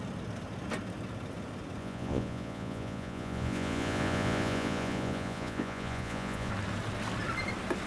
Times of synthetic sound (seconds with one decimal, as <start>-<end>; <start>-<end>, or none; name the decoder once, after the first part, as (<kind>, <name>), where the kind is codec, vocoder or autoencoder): 1.8-6.5 (vocoder, Vocos)

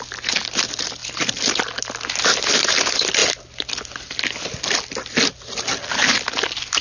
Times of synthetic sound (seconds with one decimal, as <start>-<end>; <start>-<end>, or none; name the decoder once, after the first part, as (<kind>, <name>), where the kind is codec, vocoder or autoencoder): none